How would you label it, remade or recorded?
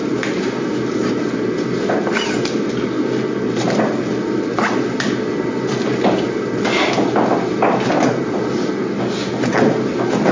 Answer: recorded